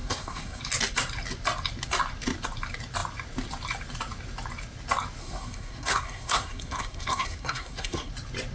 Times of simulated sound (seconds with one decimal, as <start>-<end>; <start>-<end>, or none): 0.0-0.6; 5.2-8.1